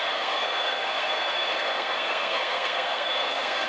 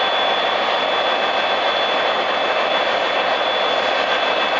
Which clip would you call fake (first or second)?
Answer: first